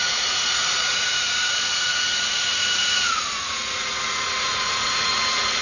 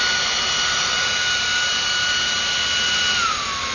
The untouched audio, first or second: second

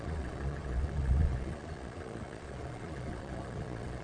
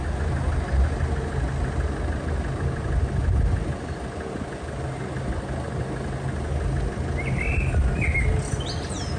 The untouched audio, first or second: second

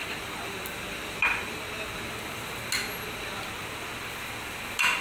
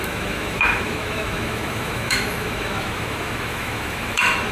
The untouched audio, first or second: first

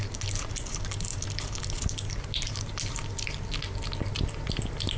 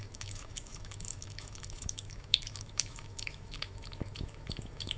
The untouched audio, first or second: first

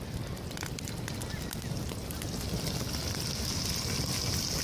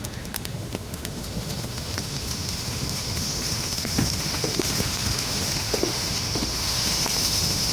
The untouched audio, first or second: first